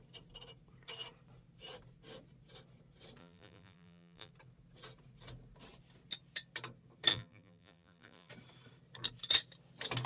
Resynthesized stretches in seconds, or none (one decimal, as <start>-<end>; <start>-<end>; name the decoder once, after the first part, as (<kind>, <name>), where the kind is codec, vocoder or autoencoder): 3.2-4.3 (vocoder, BigVGAN v2); 7.1-8.3